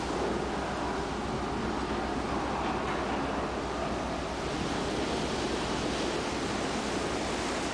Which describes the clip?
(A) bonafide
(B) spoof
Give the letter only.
A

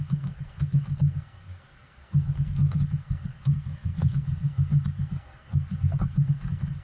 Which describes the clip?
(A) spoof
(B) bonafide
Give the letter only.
A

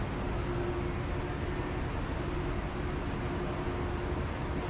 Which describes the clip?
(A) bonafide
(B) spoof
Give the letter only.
A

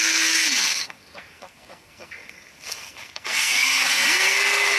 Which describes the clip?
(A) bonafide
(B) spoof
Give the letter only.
B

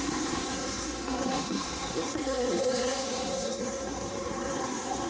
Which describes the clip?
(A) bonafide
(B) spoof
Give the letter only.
B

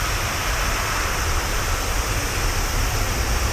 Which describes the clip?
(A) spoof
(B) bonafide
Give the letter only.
B